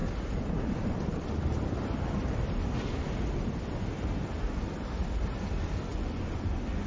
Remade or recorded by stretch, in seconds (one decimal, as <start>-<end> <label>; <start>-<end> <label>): 0.0-5.9 recorded; 5.9-6.9 remade